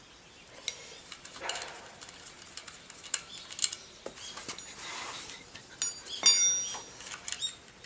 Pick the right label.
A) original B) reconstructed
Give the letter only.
A